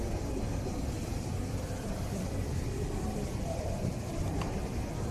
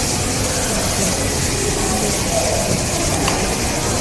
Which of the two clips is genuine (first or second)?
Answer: second